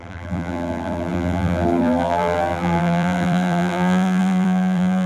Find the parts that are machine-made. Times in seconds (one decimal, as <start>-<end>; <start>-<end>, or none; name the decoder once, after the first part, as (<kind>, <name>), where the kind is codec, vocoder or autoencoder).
0.0-5.1 (vocoder, BigVGAN v2)